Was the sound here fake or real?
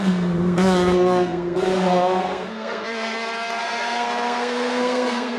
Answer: fake